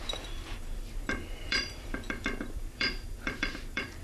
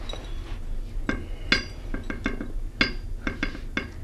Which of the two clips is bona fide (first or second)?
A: second